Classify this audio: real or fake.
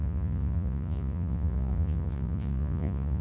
fake